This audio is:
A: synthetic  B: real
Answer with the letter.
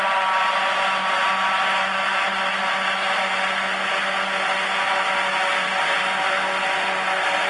B